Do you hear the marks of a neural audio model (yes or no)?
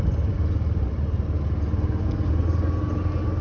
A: no